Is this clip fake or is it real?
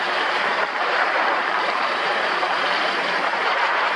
fake